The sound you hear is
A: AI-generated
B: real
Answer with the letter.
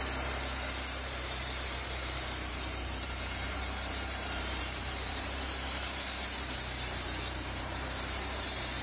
A